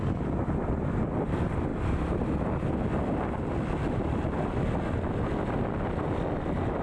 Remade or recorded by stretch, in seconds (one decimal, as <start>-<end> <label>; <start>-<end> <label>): 0.0-6.8 recorded

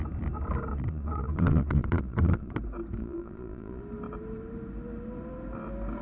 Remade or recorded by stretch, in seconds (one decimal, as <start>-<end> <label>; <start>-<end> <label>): 0.0-0.7 recorded; 0.7-2.5 remade; 2.5-3.0 recorded; 3.0-3.8 remade; 3.8-6.0 recorded

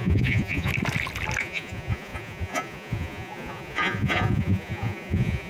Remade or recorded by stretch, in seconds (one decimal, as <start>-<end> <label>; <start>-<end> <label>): 0.0-0.7 remade; 0.7-1.4 recorded; 1.4-5.5 remade

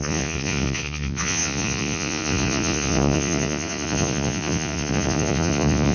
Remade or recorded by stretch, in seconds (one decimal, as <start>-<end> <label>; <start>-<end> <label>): 0.0-5.9 remade

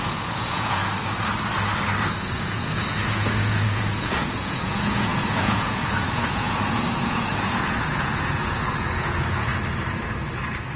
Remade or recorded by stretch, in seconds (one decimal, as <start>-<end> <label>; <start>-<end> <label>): 0.0-0.8 remade; 0.8-2.2 recorded; 2.2-9.5 remade; 9.5-10.8 recorded

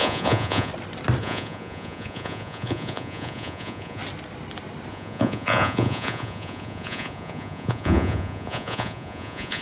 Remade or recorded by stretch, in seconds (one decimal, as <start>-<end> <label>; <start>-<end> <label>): 0.0-0.7 remade; 0.7-1.2 recorded; 1.2-4.0 remade; 4.0-4.9 recorded; 4.9-9.6 remade

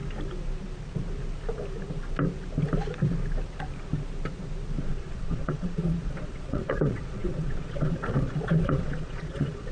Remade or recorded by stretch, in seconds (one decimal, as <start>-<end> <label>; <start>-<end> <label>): 0.0-4.8 recorded; 4.8-9.7 remade

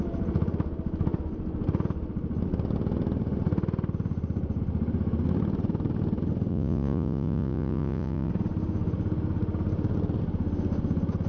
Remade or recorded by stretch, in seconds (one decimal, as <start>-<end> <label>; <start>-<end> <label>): 0.0-6.5 recorded; 6.5-8.3 remade; 8.3-11.3 recorded